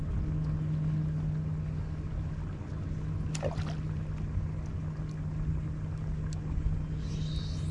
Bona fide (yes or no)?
yes